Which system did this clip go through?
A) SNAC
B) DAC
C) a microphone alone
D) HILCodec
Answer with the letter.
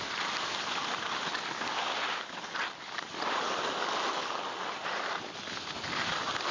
C